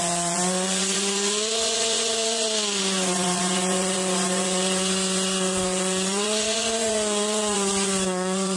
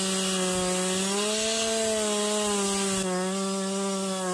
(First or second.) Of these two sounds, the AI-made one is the first